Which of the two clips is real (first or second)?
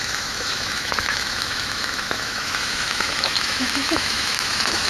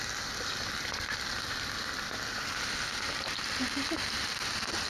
second